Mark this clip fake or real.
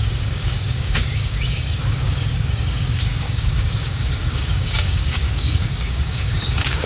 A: fake